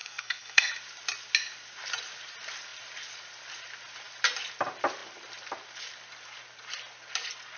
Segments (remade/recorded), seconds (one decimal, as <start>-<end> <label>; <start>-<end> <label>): 0.0-0.7 remade; 0.7-7.6 recorded